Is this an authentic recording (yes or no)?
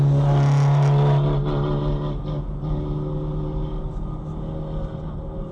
yes